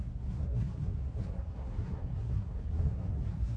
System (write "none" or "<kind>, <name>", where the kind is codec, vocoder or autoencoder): codec, SNAC